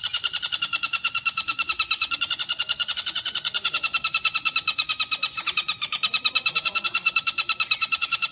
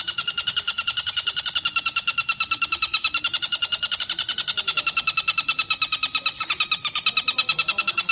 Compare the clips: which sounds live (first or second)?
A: second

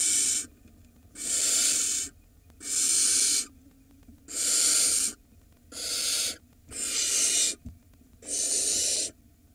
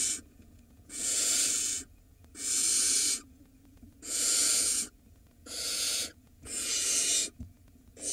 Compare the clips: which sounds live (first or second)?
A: first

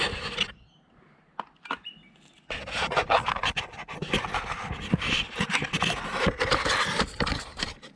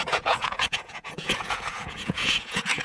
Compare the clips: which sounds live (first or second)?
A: first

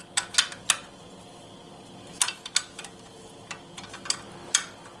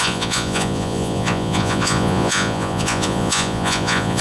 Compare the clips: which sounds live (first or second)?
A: first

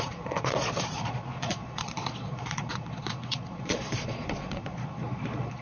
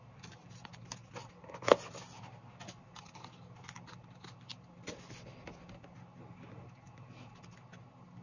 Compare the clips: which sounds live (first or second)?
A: second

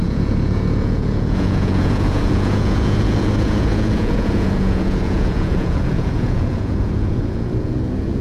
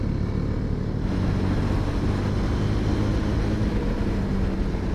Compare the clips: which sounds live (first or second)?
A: second